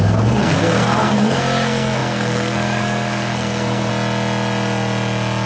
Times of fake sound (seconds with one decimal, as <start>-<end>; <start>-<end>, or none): 0.0-3.9